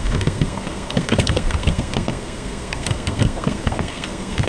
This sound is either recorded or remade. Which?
remade